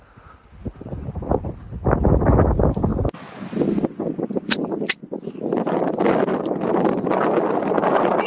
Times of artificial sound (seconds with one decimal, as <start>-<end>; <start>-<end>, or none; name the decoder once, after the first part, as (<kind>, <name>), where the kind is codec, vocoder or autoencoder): 0.6-1.3 (vocoder, BigVGAN v2)